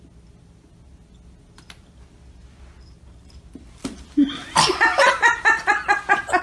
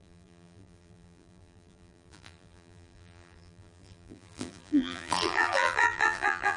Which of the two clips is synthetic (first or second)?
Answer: second